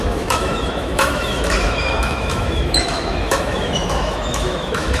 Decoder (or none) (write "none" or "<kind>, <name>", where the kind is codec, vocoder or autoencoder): autoencoder, DAC-VAE